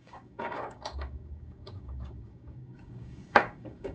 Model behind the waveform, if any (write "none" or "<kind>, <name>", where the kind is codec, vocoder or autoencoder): codec, DAC